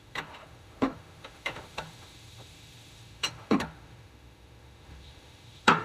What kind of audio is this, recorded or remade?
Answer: remade